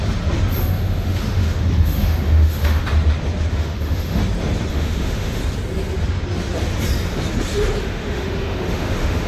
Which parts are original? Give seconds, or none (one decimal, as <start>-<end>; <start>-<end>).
0.0-0.6; 2.8-3.5; 4.2-4.7; 5.4-7.8